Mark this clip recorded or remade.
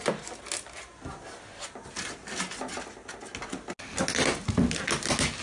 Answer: recorded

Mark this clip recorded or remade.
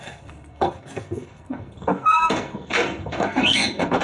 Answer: remade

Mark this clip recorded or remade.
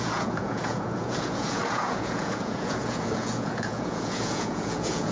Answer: remade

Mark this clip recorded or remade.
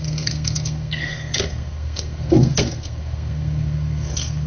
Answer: remade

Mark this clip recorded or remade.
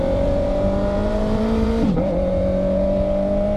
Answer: remade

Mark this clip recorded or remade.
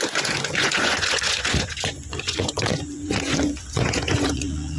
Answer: remade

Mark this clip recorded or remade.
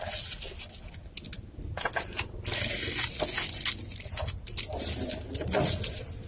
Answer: recorded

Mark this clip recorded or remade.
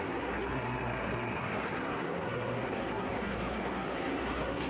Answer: remade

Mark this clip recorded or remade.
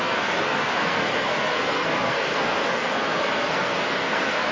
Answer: remade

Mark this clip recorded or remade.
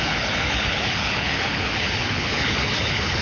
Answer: remade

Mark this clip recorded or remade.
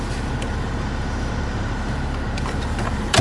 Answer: remade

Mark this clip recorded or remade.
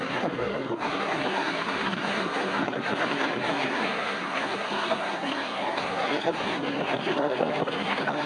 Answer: remade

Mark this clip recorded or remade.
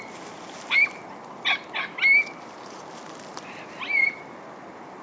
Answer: recorded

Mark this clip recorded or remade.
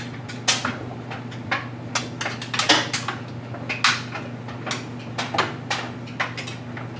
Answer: recorded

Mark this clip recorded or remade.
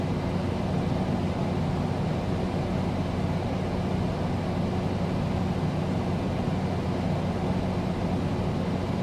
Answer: recorded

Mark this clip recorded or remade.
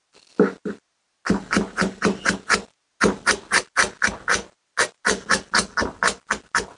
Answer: recorded